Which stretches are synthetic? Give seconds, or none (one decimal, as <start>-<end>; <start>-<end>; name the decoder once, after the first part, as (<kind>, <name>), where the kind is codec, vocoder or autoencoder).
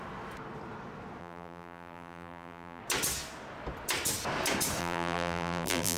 1.2-2.8 (vocoder, BigVGAN v2); 4.8-6.0